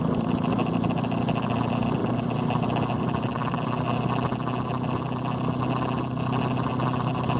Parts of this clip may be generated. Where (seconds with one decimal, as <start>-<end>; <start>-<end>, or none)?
none